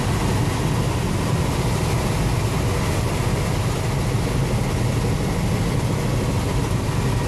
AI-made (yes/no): no